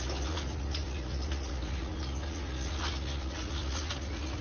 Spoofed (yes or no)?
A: yes